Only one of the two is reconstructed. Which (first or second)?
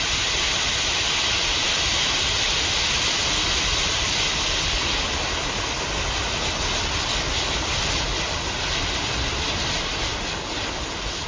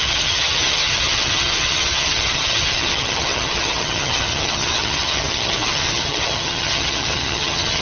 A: second